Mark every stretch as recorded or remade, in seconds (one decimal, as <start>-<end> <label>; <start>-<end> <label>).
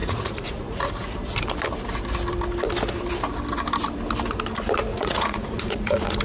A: 0.0-0.9 remade; 0.9-4.9 recorded; 4.9-6.2 remade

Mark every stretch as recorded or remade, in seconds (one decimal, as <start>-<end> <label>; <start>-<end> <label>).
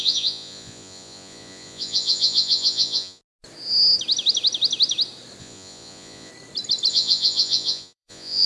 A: 0.0-3.2 remade; 3.2-5.4 recorded; 5.4-6.3 remade; 6.3-6.9 recorded; 6.9-8.5 remade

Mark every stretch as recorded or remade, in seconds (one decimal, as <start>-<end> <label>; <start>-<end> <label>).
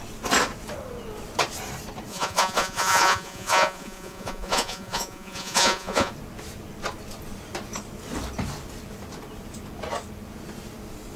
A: 0.0-2.1 recorded; 2.1-6.1 remade; 6.1-11.2 recorded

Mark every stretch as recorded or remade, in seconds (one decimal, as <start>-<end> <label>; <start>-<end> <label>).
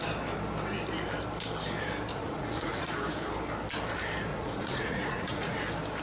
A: 0.0-2.1 recorded; 2.1-2.9 remade; 2.9-4.3 recorded; 4.3-5.6 remade; 5.6-6.0 recorded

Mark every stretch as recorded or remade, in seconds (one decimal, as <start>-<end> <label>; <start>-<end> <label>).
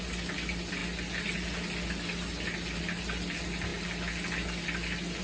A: 0.0-5.2 recorded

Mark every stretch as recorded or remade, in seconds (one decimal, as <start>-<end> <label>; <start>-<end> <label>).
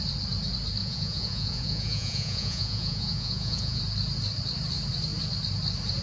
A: 0.0-0.8 recorded; 0.8-3.8 remade; 3.8-6.0 recorded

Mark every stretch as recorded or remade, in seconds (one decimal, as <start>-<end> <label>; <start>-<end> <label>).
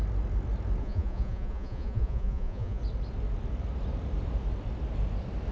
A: 0.0-0.8 recorded; 0.8-2.8 remade; 2.8-5.5 recorded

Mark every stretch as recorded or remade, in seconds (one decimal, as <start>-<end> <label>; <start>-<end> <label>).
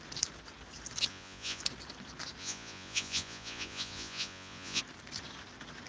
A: 0.0-1.1 recorded; 1.1-1.6 remade; 1.6-2.4 recorded; 2.4-4.8 remade; 4.8-5.9 recorded